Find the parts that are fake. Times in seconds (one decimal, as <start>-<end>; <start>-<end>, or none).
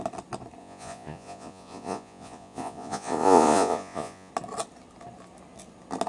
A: 0.6-4.3